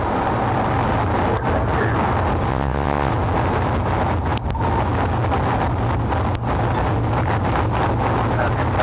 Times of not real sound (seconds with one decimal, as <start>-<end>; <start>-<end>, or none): 2.5-3.1